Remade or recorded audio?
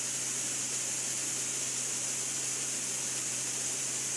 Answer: recorded